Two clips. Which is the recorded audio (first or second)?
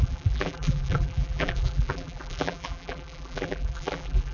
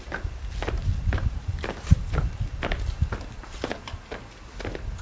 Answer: second